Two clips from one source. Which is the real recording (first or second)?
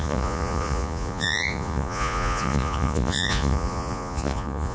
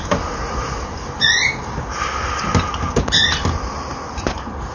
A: second